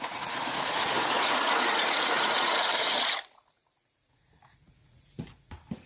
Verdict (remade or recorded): remade